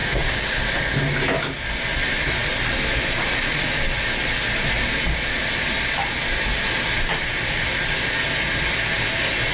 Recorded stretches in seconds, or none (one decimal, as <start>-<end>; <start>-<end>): 0.6-9.5